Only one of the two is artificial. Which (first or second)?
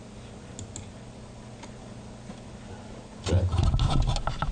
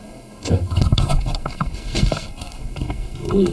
second